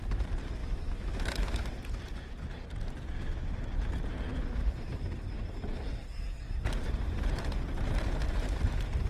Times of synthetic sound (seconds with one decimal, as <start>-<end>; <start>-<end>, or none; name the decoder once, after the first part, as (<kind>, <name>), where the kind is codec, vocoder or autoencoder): 0.6-1.7 (autoencoder, DAC-VAE)